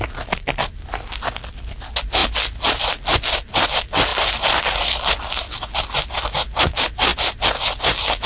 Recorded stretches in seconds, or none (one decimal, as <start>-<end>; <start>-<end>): 0.0-2.2; 3.6-4.1; 5.1-8.3